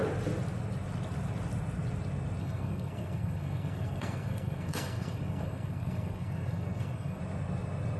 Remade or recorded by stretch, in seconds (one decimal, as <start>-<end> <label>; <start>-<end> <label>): 0.0-2.4 recorded; 2.4-7.2 remade; 7.2-8.0 recorded